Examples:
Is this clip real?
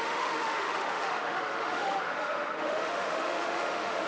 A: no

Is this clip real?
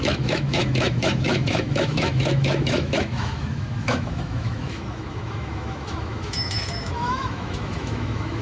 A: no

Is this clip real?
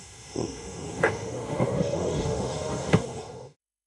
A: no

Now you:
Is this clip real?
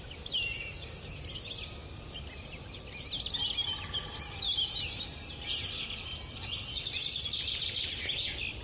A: yes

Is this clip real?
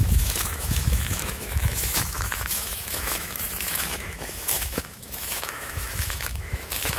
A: no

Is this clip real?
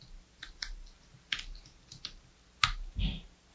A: yes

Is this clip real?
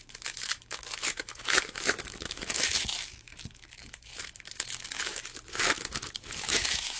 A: no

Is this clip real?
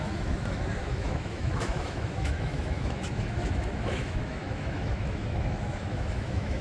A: no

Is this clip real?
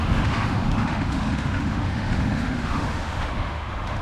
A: no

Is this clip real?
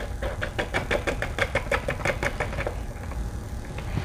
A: yes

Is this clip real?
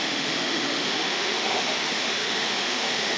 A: no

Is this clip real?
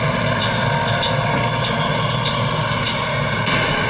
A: yes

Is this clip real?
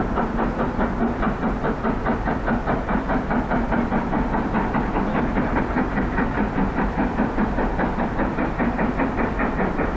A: yes